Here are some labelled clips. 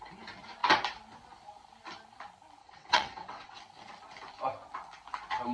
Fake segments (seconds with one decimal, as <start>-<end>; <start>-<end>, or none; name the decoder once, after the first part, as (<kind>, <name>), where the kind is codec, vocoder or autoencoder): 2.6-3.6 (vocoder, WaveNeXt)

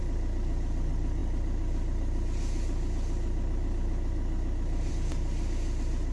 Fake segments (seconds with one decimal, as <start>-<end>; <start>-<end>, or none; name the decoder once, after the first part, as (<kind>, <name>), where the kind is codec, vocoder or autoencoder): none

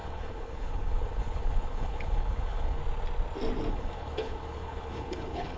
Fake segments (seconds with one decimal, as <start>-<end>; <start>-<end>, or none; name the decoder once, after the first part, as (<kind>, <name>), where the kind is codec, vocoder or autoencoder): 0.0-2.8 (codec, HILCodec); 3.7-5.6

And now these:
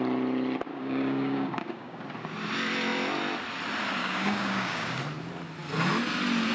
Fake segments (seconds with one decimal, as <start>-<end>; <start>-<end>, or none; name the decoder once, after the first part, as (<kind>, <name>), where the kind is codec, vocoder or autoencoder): 0.7-2.0 (codec, DAC); 4.0-5.0

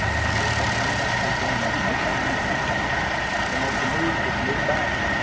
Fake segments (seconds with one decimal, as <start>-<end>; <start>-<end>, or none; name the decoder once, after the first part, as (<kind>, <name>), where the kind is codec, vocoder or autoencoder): none

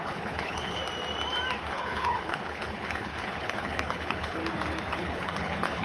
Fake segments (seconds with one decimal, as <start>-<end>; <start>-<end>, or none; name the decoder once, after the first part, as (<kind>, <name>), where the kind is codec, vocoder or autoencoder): 0.0-0.8 (codec, HILCodec); 1.7-4.4; 4.9-5.8

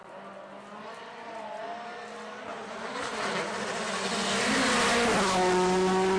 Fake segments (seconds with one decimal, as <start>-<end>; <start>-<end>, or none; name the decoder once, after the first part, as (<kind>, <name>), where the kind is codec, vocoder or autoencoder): none